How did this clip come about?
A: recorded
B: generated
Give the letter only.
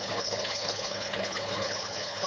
B